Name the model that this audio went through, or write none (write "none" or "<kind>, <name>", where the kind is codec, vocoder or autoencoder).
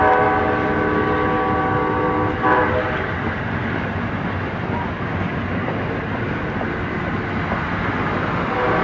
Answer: none